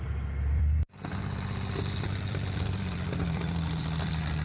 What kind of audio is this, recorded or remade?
remade